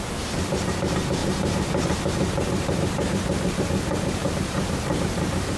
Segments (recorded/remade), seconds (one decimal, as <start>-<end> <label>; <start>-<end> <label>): 0.0-1.2 recorded; 1.2-3.6 remade; 3.6-4.2 recorded; 4.2-5.6 remade